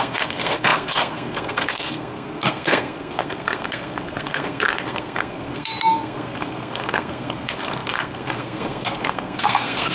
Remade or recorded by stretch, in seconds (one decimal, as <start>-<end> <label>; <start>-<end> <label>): 0.0-9.9 remade